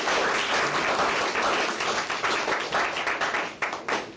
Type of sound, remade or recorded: recorded